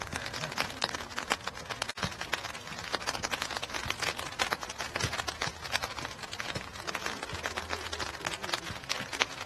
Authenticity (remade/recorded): remade